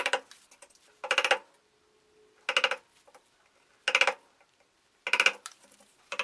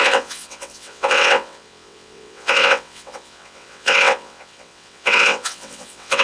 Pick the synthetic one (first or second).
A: second